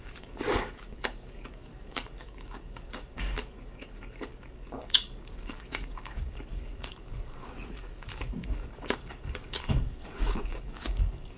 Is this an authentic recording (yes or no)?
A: no